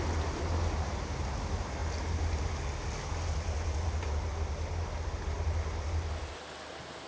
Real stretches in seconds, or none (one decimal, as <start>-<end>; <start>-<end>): 0.0-7.1